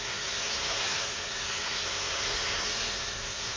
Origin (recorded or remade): remade